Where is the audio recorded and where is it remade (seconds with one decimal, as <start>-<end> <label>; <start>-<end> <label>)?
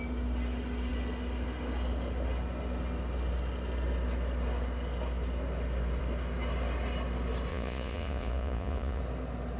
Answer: 0.0-7.5 recorded; 7.5-9.0 remade; 9.0-9.6 recorded